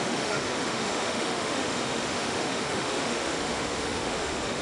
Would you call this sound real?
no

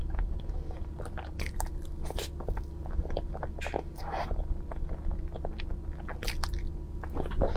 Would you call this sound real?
yes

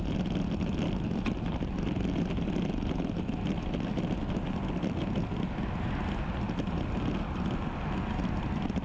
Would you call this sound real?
yes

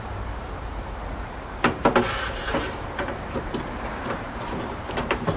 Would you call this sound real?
no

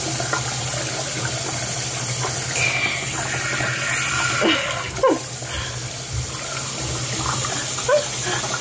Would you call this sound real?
yes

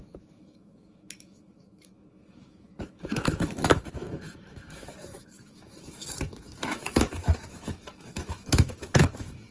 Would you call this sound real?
no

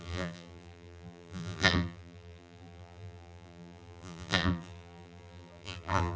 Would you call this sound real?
no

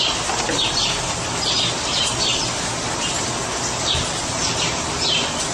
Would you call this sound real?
yes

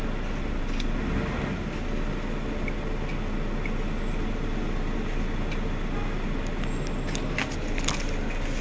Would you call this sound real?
yes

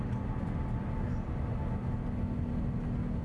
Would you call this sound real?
yes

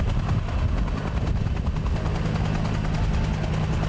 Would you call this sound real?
yes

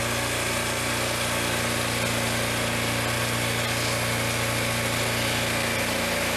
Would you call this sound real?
yes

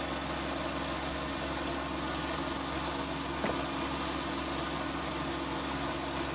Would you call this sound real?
yes